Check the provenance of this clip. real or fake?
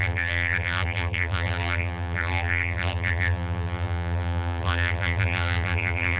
fake